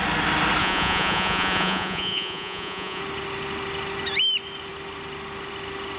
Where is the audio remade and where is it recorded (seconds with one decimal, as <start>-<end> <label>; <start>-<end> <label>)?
0.0-0.6 recorded; 0.6-3.0 remade; 3.0-6.0 recorded